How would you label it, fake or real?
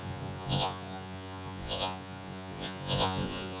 fake